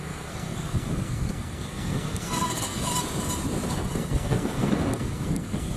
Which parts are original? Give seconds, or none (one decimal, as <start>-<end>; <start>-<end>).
2.9-3.7